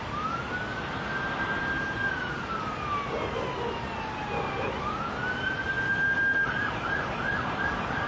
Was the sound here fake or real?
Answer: real